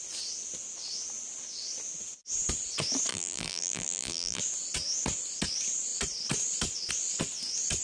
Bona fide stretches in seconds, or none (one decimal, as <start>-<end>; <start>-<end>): 0.0-3.1; 4.4-7.8